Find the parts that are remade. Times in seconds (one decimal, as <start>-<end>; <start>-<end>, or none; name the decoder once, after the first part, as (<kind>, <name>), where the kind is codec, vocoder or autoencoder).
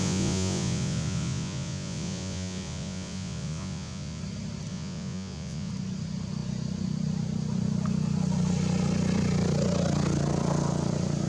0.0-4.2 (vocoder, Vocos); 4.7-5.7